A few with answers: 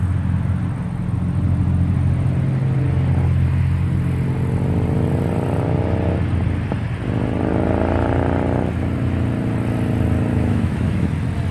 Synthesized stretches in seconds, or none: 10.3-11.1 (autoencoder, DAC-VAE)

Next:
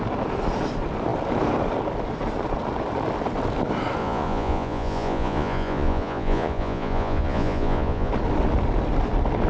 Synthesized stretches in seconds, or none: 4.0-8.1 (vocoder, Vocos)

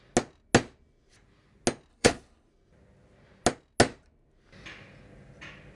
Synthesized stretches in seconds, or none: 1.9-2.5 (codec, HILCodec)

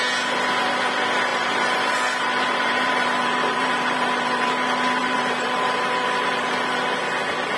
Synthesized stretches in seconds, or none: 1.3-4.5 (vocoder, BigVGAN v2); 5.0-7.0

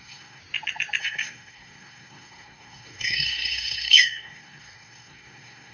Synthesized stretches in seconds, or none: 0.0-0.4 (codec, SNAC); 1.0-5.7

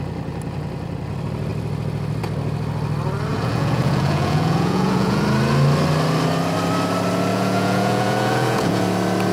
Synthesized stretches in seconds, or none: 3.3-5.2 (vocoder, Vocos); 7.3-8.8

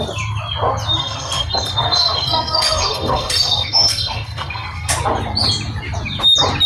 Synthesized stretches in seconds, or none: 1.0-4.9 (codec, SNAC)

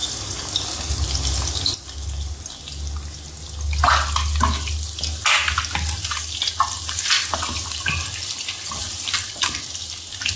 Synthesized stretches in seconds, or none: none